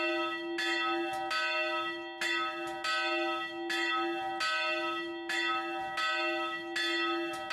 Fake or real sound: real